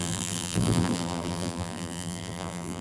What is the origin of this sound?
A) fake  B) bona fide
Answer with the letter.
A